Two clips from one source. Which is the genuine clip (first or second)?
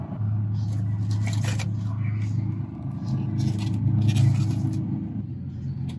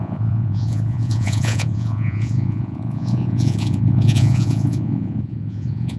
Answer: first